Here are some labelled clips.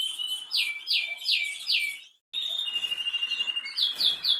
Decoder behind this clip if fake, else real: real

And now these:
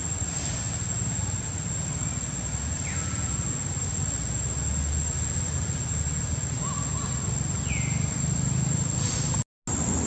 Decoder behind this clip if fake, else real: real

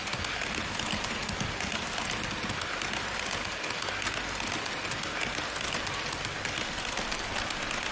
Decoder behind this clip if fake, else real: real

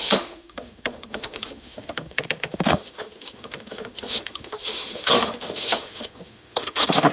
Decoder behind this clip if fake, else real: fake, autoencoder, DAC-VAE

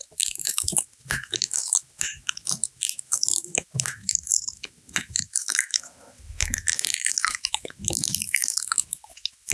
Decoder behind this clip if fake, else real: fake, autoencoder, DAC-VAE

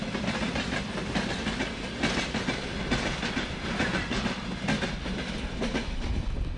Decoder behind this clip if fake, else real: real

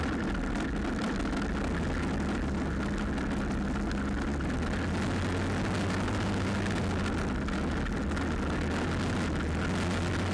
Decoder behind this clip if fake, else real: real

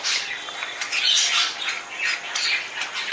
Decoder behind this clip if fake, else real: real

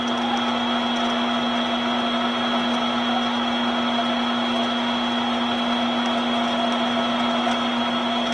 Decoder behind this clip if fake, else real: real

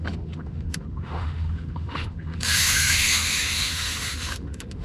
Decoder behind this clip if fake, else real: fake, autoencoder, DAC-VAE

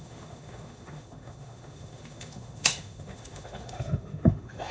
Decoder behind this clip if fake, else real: fake, autoencoder, DAC-VAE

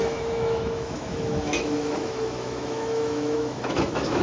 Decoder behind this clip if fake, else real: fake, autoencoder, DAC-VAE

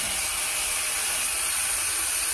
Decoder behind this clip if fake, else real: real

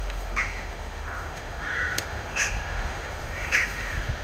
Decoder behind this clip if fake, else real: fake, autoencoder, DAC-VAE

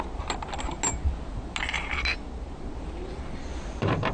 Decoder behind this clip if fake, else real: real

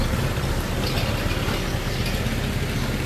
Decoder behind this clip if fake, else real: real